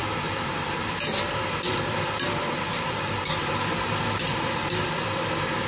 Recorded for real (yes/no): no